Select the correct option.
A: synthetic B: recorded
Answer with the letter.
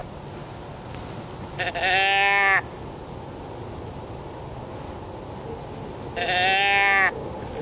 B